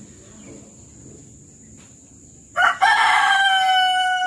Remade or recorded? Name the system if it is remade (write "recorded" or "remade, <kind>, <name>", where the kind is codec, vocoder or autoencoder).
recorded